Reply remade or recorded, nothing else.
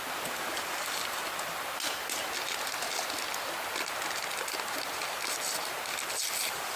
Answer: recorded